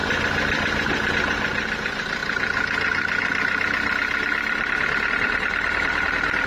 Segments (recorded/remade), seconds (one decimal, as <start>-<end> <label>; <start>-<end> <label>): 0.0-1.1 recorded; 1.1-2.2 remade; 2.2-5.1 recorded; 5.1-6.5 remade